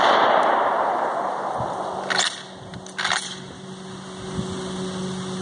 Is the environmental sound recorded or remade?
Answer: recorded